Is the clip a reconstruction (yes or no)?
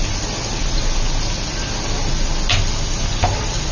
no